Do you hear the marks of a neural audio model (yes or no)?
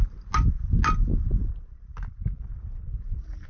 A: no